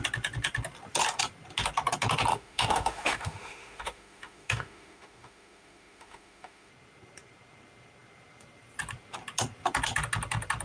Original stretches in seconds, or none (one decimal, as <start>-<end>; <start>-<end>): 0.0-2.3; 6.7-10.6

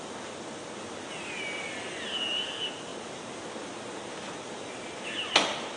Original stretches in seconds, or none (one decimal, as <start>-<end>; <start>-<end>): 0.0-5.8